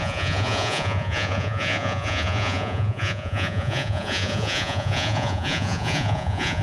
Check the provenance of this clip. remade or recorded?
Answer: remade